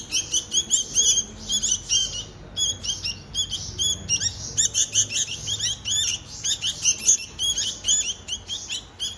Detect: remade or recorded recorded